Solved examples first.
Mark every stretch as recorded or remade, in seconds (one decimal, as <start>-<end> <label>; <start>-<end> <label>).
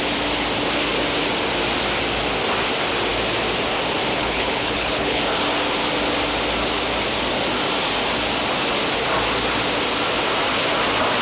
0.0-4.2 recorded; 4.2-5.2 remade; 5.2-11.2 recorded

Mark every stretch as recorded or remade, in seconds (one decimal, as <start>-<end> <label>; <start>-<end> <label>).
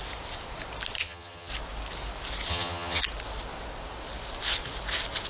0.0-1.0 recorded; 1.0-1.5 remade; 1.5-2.5 recorded; 2.5-3.0 remade; 3.0-5.3 recorded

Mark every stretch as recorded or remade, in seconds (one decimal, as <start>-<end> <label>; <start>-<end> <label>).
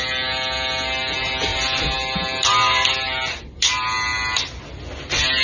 0.0-5.4 recorded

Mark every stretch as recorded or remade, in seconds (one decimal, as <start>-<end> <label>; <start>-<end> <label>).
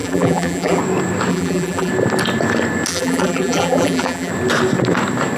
0.0-0.8 remade; 0.8-1.3 recorded; 1.3-1.9 remade; 1.9-2.9 recorded; 2.9-4.3 remade; 4.3-5.4 recorded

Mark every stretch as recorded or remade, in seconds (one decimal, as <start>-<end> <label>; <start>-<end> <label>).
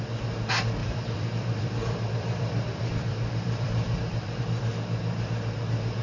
0.0-0.8 recorded; 0.8-4.4 remade; 4.4-6.0 recorded